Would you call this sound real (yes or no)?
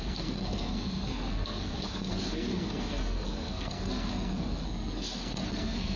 no